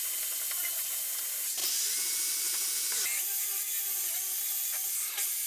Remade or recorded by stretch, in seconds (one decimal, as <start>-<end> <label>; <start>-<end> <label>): 0.0-5.5 recorded

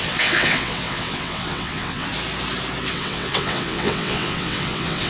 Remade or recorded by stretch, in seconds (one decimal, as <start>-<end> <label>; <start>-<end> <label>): 0.0-2.1 remade; 2.1-2.9 recorded; 2.9-5.1 remade